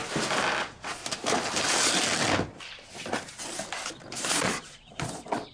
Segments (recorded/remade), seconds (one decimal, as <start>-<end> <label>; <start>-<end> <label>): 0.0-0.6 recorded; 0.6-1.0 remade; 1.0-4.3 recorded; 4.3-5.5 remade